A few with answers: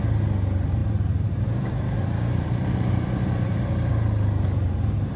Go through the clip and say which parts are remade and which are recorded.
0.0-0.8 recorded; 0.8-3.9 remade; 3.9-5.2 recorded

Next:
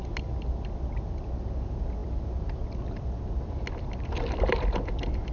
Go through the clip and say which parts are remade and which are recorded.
0.0-5.3 recorded

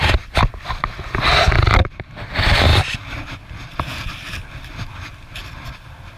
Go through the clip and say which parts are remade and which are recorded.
0.0-6.2 recorded

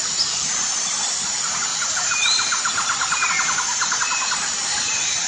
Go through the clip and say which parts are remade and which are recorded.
0.0-5.3 remade

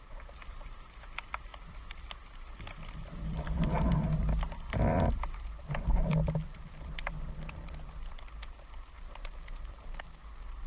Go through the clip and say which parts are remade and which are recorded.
0.0-10.7 remade

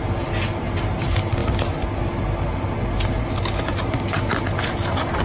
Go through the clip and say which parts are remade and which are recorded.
0.0-5.2 recorded

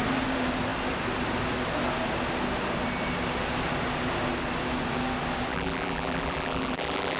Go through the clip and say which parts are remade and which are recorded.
0.0-5.5 recorded; 5.5-7.2 remade